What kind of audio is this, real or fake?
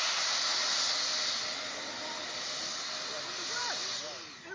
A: real